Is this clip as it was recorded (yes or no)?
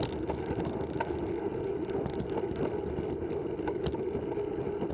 yes